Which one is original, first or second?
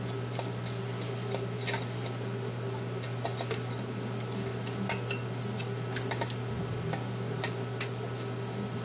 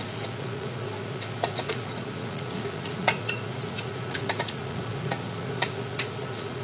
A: first